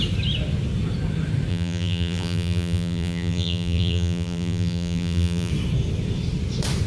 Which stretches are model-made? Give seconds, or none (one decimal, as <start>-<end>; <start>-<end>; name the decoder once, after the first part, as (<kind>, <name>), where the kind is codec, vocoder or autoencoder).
1.5-5.5 (vocoder, BigVGAN v2)